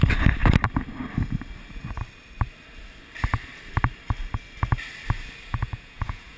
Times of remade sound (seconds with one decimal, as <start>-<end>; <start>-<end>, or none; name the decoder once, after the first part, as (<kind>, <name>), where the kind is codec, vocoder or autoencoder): 5.5-6.4 (vocoder, Vocos)